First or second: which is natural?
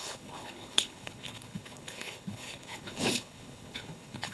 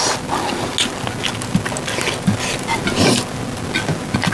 second